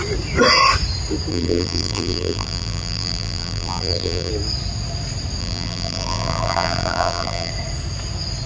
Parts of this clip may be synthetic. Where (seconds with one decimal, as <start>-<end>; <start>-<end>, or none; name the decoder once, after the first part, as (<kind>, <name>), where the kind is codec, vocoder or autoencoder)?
1.3-4.3 (vocoder, BigVGAN v2); 5.4-7.5